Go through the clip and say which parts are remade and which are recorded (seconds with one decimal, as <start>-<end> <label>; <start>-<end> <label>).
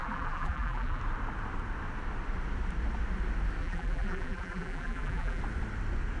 0.0-1.0 remade; 1.0-3.6 recorded; 3.6-5.4 remade; 5.4-6.2 recorded